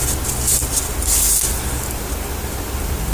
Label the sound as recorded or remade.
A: recorded